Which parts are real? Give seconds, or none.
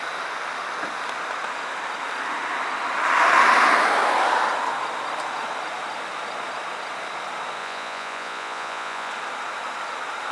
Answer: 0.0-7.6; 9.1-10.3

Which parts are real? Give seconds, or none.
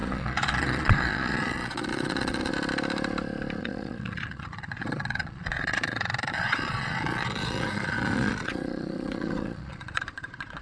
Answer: 2.5-3.6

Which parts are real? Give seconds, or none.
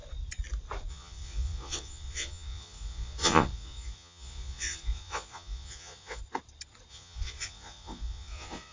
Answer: 0.0-0.9; 6.2-6.9